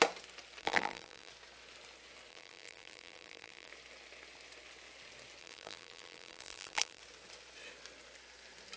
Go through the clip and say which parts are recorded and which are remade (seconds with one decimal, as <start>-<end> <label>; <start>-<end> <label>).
0.0-0.6 recorded; 0.6-1.3 remade; 1.3-2.3 recorded; 2.3-3.7 remade; 3.7-5.4 recorded; 5.4-7.0 remade; 7.0-8.8 recorded